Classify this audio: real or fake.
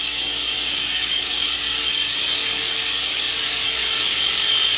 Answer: fake